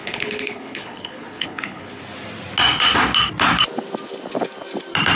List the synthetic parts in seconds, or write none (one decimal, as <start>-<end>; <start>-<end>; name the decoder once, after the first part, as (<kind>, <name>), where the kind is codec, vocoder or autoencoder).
0.0-2.0 (codec, HILCodec)